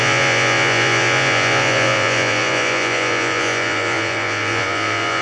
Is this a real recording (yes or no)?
no